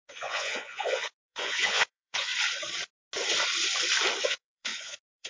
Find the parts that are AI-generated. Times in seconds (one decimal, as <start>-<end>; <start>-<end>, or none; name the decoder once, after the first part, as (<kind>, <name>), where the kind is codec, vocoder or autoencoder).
0.0-2.3 (vocoder, Vocos); 4.2-5.3